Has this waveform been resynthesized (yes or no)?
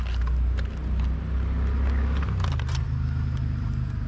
no